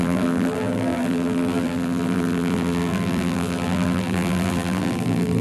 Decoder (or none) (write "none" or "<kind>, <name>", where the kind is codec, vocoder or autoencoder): vocoder, BigVGAN v2